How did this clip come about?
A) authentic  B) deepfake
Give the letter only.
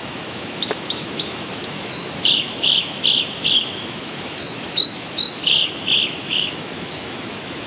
B